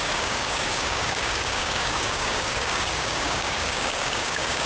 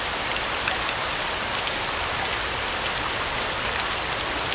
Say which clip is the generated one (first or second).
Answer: first